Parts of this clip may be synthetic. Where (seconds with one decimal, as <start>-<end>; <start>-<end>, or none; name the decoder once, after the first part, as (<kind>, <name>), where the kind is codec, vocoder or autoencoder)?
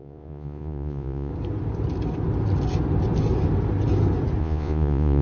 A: 0.0-1.3 (vocoder, Vocos); 4.4-5.2